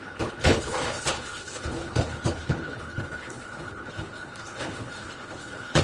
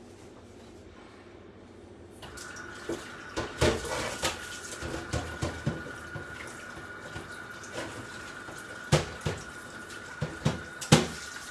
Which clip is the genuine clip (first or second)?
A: second